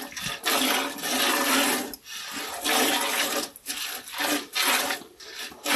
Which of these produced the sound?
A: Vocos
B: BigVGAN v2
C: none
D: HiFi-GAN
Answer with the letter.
C